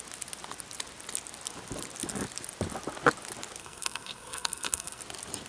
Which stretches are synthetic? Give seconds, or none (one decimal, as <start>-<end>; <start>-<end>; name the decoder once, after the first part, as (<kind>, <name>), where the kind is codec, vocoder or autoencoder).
3.6-5.0 (codec, SNAC)